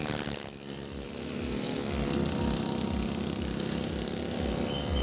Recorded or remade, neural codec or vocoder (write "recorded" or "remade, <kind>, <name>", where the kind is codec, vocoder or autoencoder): recorded